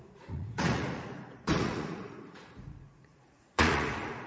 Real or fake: fake